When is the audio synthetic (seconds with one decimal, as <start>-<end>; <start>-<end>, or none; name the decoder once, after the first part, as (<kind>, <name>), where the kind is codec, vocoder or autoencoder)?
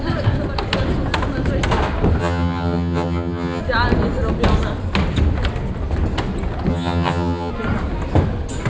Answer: 2.2-3.6 (vocoder, HiFi-GAN); 6.7-7.5